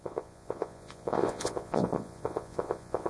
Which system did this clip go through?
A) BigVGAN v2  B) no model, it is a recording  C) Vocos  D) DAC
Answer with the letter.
C